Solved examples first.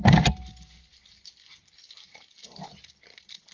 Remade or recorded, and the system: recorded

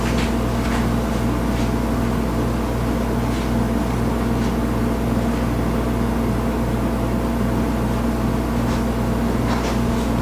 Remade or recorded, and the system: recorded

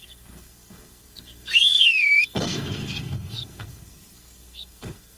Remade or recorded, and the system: remade, codec, SNAC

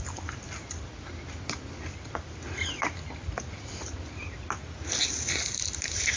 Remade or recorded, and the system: recorded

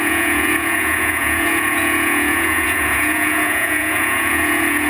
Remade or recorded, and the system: remade, vocoder, Vocos